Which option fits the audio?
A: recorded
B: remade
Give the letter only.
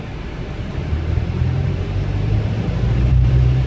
B